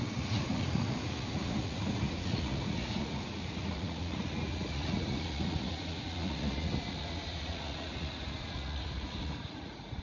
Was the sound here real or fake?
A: fake